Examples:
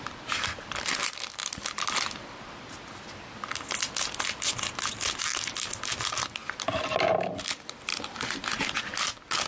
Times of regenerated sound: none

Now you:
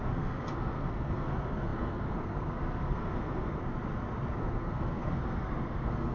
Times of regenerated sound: 0.0-3.6 (codec, SNAC); 4.4-6.1

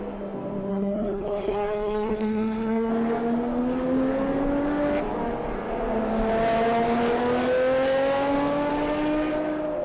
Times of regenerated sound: 0.7-2.9 (codec, SNAC)

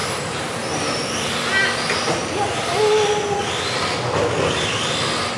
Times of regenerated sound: none

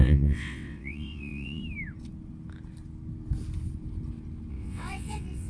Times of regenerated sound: 0.0-1.6 (vocoder, WaveNeXt); 4.5-5.5

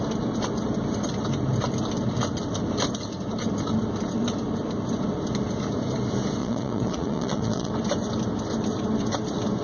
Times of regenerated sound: 6.4-7.7 (vocoder, Vocos)

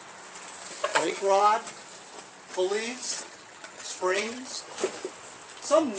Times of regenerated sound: 0.9-1.4 (vocoder, HiFi-GAN); 3.0-4.6

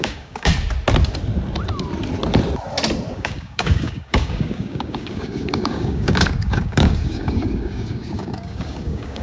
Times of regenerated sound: 0.0-0.5 (codec, DAC); 3.1-9.2